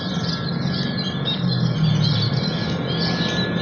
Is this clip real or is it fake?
real